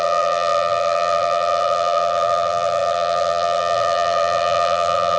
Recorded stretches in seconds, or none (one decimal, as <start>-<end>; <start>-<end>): none